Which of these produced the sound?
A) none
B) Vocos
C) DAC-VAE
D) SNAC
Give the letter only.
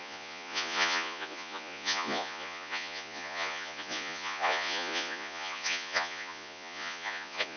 B